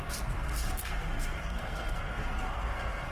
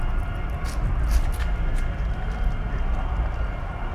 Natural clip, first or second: second